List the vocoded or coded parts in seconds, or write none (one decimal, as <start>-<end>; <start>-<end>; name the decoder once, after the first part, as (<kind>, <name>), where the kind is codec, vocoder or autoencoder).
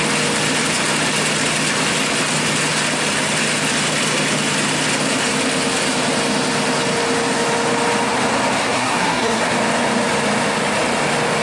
8.6-9.5 (codec, SNAC)